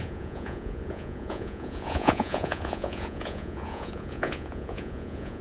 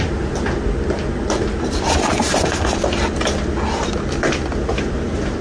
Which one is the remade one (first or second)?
first